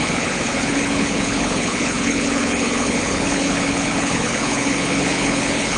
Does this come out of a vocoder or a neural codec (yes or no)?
yes